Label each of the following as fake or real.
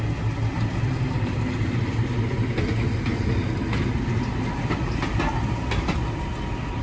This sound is real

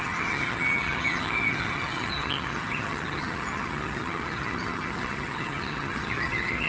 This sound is fake